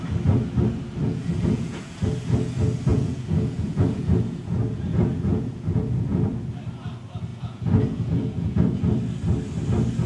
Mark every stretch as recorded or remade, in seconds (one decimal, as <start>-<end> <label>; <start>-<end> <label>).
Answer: 0.0-1.0 recorded; 1.0-2.0 remade; 2.0-2.9 recorded; 2.9-6.3 remade; 6.3-7.3 recorded; 7.3-8.8 remade; 8.8-10.1 recorded